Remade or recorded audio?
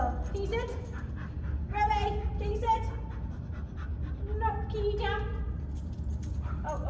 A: recorded